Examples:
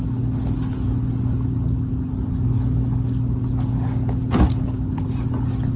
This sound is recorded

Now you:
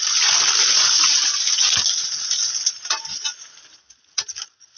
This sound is recorded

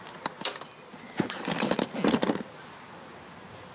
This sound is recorded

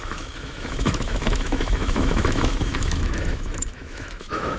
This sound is remade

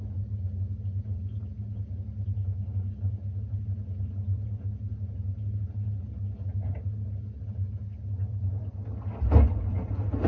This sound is recorded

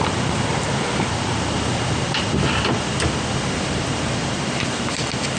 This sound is recorded